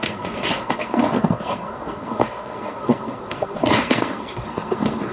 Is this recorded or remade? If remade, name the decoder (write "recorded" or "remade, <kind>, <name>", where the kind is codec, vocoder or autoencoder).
remade, codec, SNAC